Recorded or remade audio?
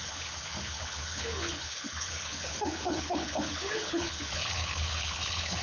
remade